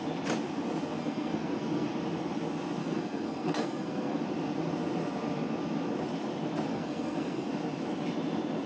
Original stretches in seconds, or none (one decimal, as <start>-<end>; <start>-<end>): 0.0-1.0; 1.9-2.8; 4.2-6.7; 7.5-8.7